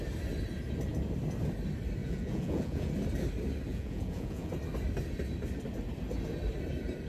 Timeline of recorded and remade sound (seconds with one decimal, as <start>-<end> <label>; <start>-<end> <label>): 0.0-2.0 recorded; 2.0-2.9 remade; 2.9-3.7 recorded; 3.7-4.5 remade; 4.5-7.1 recorded